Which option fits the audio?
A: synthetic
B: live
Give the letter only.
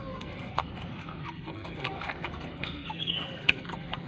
A